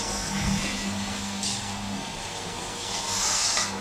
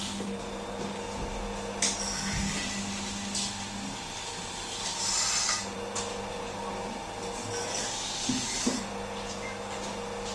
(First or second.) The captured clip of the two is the second